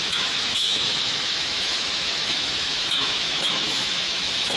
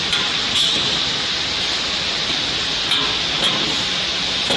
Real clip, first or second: second